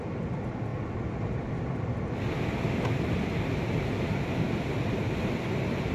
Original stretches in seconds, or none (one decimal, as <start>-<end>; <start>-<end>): 0.0-5.9